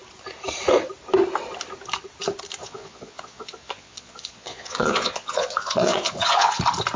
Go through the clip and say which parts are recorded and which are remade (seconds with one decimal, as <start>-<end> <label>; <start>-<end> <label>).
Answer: 0.0-2.6 recorded; 2.6-6.6 remade; 6.6-7.0 recorded